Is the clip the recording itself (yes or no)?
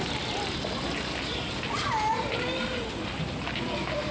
yes